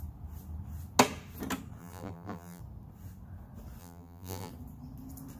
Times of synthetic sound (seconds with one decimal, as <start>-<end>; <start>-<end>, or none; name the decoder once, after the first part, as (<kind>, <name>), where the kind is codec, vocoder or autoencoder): 1.8-2.6 (vocoder, BigVGAN v2); 3.8-4.5